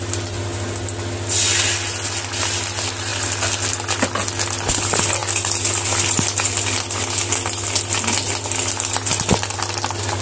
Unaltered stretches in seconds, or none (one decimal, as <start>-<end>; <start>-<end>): 0.0-5.2